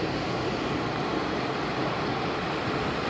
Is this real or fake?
real